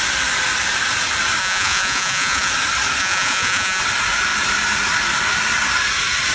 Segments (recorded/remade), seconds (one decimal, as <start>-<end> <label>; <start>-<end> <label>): 0.0-1.4 recorded; 1.4-2.5 remade; 2.5-3.0 recorded; 3.0-3.8 remade; 3.8-6.3 recorded